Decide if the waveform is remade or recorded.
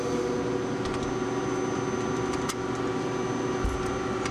recorded